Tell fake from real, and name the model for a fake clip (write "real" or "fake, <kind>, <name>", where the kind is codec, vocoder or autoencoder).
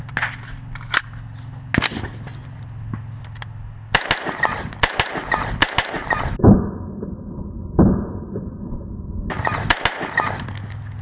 real